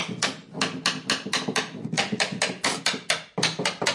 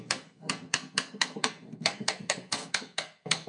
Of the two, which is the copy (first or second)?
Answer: second